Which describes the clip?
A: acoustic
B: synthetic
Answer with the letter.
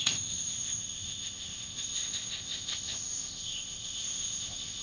B